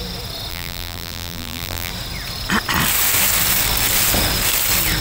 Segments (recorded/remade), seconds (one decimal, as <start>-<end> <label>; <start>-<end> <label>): 0.0-0.5 recorded; 0.5-1.9 remade; 1.9-5.0 recorded

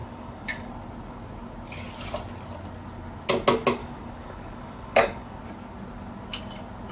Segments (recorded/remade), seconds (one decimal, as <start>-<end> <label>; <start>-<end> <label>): 0.0-0.7 remade; 0.7-3.8 recorded; 3.8-5.4 remade; 5.4-6.9 recorded

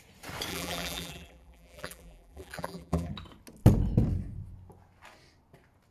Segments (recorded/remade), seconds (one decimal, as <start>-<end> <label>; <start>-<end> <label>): 0.0-0.5 recorded; 0.5-3.1 remade; 3.1-5.9 recorded

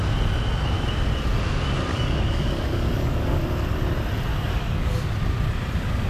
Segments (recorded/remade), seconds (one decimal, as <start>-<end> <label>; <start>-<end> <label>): 0.0-1.9 recorded; 1.9-3.4 remade; 3.4-4.3 recorded; 4.3-4.9 remade; 4.9-6.1 recorded

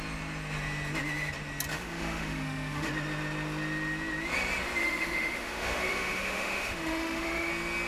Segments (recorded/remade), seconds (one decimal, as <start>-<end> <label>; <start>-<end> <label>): 0.0-1.7 recorded; 1.7-2.9 remade; 2.9-4.8 recorded; 4.8-7.5 remade; 7.5-7.9 recorded

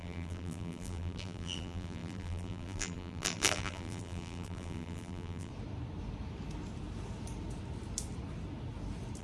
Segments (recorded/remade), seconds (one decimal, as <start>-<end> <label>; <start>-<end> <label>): 0.0-5.5 remade; 5.5-9.2 recorded

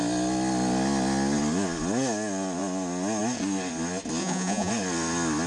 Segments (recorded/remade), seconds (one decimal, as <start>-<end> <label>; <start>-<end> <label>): 0.0-4.2 recorded; 4.2-4.7 remade; 4.7-5.5 recorded